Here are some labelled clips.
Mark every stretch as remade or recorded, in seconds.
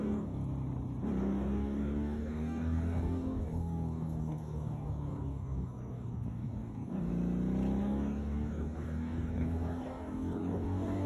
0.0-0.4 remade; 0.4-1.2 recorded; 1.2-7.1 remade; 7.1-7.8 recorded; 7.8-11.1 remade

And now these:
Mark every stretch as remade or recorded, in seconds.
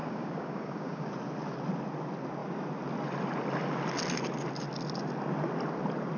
0.0-1.1 remade; 1.1-6.2 recorded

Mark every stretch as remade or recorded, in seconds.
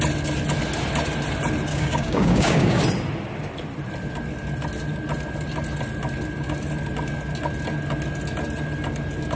0.0-1.7 recorded; 1.7-2.8 remade; 2.8-9.4 recorded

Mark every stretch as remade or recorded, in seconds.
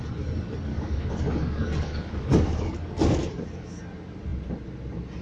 0.0-0.7 recorded; 0.7-3.8 remade; 3.8-5.2 recorded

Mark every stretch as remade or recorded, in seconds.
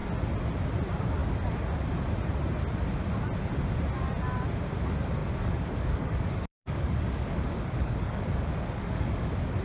0.0-5.2 recorded; 5.2-9.6 remade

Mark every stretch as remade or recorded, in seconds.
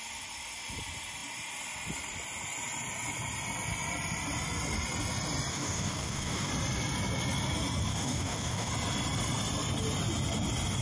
0.0-5.5 recorded; 5.5-6.5 remade; 6.5-7.9 recorded; 7.9-8.7 remade; 8.7-10.8 recorded